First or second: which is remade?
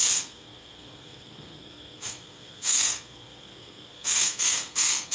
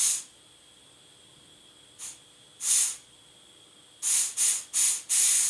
first